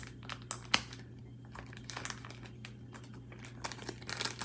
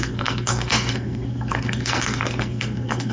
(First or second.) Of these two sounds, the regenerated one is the second